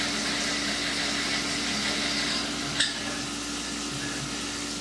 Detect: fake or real real